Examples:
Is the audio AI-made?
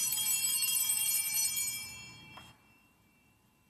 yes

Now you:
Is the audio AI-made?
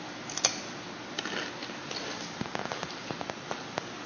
no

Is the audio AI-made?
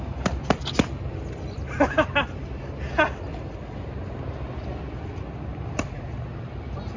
no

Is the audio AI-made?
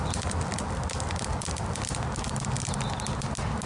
no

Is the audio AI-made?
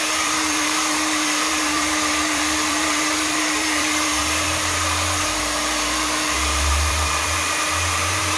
yes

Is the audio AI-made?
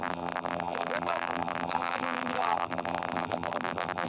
yes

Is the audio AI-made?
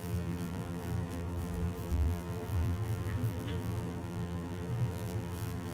yes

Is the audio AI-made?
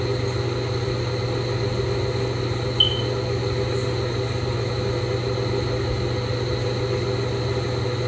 no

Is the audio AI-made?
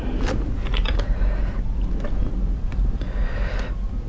no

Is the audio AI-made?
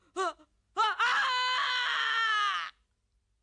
no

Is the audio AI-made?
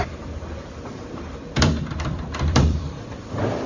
yes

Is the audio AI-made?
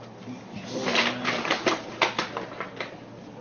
no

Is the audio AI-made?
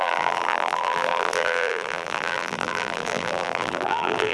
yes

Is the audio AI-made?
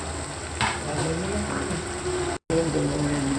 no